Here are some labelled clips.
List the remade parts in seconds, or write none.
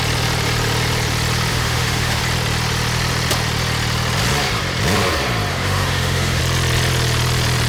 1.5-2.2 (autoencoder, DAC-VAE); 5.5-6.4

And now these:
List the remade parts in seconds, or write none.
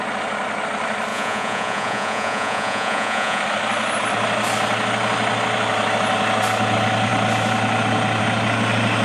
1.1-3.4 (vocoder, Vocos)